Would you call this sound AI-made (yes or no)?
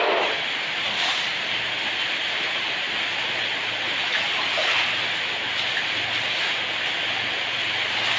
no